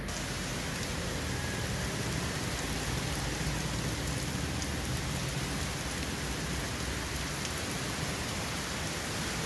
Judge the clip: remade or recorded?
recorded